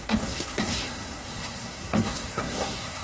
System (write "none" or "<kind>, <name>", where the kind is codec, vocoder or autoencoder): codec, SNAC